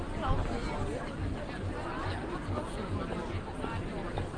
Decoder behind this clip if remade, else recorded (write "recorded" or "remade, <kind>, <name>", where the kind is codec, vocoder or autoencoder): recorded